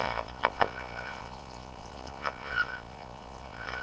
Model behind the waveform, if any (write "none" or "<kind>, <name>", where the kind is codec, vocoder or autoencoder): vocoder, Vocos